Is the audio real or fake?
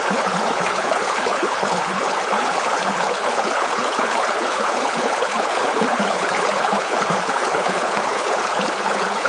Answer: fake